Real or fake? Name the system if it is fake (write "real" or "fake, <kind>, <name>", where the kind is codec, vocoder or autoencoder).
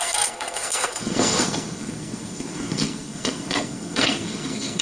fake, codec, SNAC